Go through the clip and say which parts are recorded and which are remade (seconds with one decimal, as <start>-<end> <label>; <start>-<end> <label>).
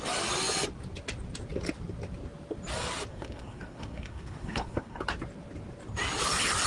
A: 0.0-3.1 recorded; 3.1-5.0 remade; 5.0-6.7 recorded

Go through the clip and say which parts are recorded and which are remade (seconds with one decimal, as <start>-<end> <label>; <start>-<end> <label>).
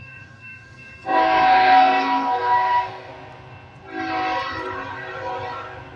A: 0.0-3.1 remade; 3.1-6.0 recorded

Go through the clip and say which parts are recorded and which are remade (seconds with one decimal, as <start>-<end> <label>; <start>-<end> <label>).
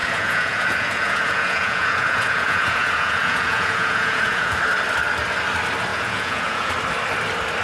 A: 0.0-4.6 remade; 4.6-5.9 recorded; 5.9-6.7 remade; 6.7-7.6 recorded